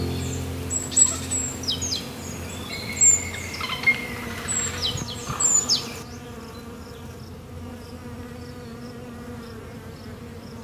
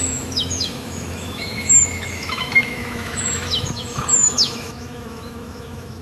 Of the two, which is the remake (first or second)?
second